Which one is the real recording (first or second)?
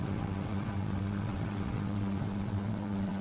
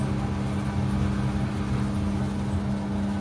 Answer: second